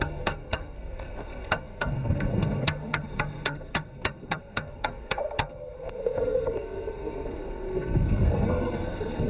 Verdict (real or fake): fake